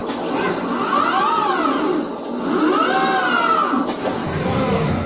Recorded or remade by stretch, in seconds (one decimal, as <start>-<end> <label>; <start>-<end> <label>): 0.0-4.2 recorded; 4.2-5.1 remade